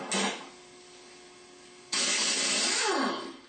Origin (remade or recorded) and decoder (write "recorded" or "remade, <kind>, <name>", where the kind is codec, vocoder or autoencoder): recorded